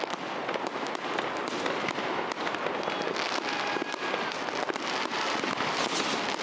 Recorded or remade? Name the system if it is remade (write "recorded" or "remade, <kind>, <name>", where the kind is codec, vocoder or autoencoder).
recorded